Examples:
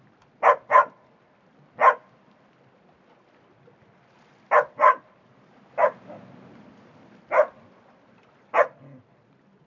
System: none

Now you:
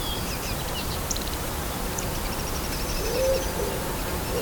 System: vocoder, BigVGAN v2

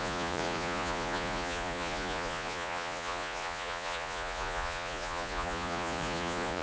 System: vocoder, Vocos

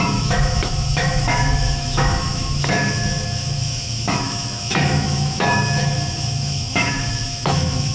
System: autoencoder, DAC-VAE